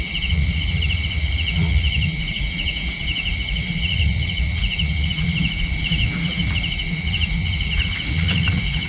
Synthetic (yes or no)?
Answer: yes